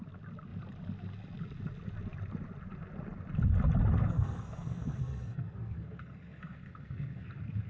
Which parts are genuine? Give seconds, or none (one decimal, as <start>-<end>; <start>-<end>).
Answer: 0.0-4.0; 7.3-7.7